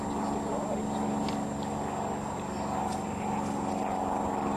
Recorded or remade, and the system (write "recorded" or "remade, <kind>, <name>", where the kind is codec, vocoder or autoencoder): recorded